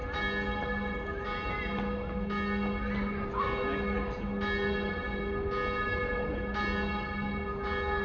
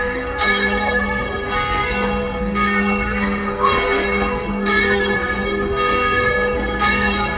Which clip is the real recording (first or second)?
first